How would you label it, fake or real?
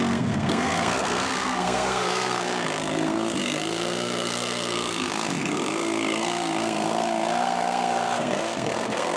fake